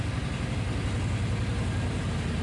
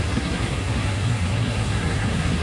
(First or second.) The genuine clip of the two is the first